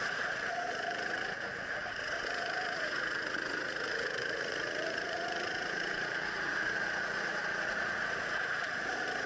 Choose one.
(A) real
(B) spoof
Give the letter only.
B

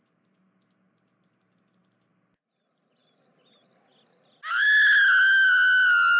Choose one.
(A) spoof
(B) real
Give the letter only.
B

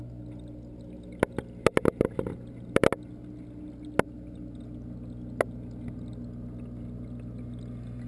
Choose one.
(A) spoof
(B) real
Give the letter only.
B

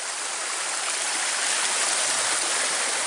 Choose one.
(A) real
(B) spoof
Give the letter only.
A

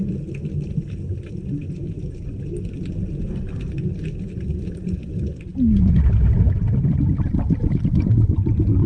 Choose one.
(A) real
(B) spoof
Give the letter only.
A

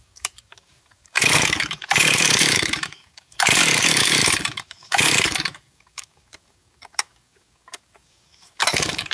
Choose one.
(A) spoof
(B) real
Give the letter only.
A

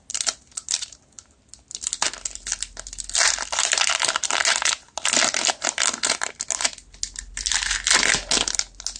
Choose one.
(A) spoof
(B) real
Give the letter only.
B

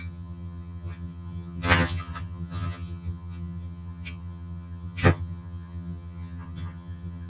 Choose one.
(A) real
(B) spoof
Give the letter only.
B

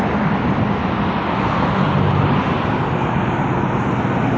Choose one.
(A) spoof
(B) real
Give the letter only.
B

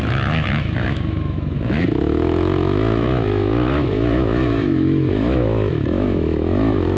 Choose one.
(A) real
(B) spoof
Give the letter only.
B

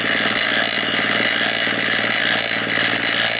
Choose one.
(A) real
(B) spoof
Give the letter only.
A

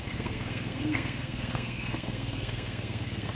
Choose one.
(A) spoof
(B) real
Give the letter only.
A